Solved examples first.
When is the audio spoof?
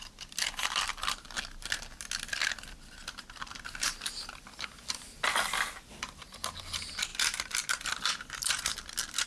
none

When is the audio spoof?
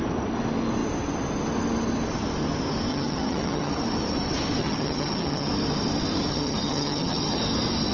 2.9-3.7 (vocoder, HiFi-GAN); 4.6-5.5; 6.3-7.4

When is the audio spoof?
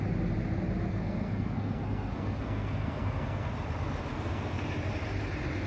0.9-3.5 (codec, SNAC); 4.1-4.6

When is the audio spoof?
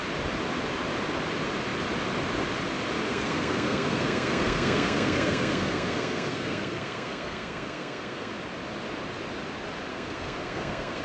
3.1-8.3 (codec, SNAC); 9.9-11.0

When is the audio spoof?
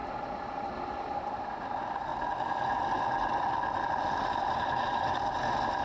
0.5-2.1 (vocoder, BigVGAN v2)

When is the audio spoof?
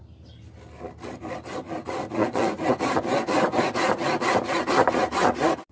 2.2-2.7 (vocoder, Vocos); 3.1-3.7